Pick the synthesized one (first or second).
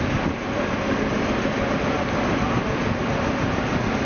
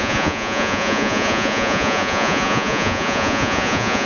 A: second